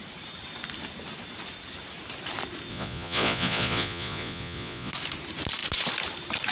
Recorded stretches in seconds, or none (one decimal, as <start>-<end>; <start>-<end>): 0.0-2.7; 4.9-6.5